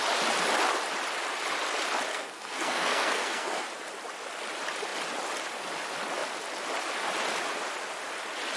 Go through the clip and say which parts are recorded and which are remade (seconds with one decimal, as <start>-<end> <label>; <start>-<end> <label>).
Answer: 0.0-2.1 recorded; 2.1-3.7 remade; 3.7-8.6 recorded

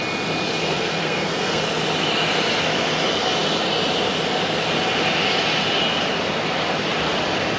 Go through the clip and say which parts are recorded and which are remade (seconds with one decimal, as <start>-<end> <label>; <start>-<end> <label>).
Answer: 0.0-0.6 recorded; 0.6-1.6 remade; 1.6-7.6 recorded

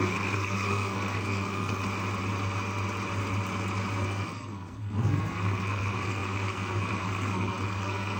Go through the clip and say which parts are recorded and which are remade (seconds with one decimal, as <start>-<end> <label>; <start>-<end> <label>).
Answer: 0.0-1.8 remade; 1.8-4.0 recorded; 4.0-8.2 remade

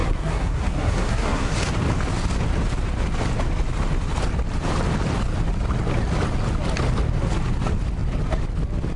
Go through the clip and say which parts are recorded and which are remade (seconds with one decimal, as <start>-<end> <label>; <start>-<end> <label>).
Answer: 0.0-1.5 remade; 1.5-9.0 recorded

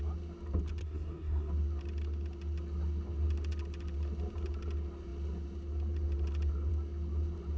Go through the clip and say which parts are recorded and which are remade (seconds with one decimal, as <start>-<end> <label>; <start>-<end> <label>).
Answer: 0.0-0.8 recorded; 0.8-1.5 remade; 1.5-7.6 recorded

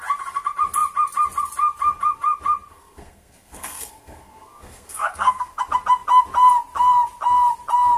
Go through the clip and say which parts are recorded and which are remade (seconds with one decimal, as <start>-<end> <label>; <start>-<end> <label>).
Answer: 0.0-2.7 recorded; 2.7-5.6 remade; 5.6-8.0 recorded

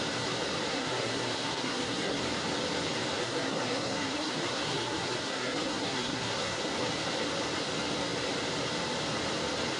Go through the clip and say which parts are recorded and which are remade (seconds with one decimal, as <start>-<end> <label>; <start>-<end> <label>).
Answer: 0.0-0.7 recorded; 0.7-2.2 remade; 2.2-3.2 recorded; 3.2-6.6 remade; 6.6-9.8 recorded

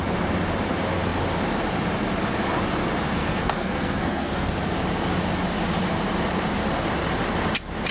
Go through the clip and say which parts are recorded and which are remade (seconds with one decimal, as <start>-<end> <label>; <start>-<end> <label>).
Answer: 0.0-3.2 recorded; 3.2-4.5 remade; 4.5-7.9 recorded